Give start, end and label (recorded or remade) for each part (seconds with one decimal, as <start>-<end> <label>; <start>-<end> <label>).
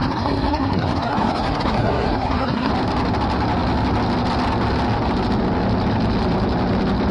0.0-2.7 remade; 2.7-7.1 recorded